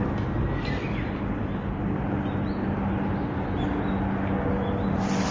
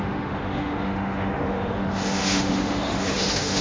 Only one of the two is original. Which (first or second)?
first